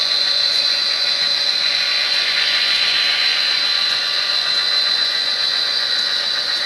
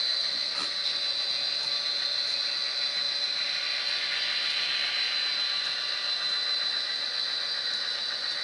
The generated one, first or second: first